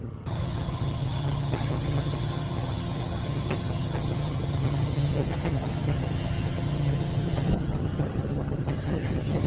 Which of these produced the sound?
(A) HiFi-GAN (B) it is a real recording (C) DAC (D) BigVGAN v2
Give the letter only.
A